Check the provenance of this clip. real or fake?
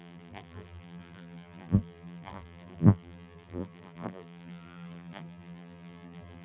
fake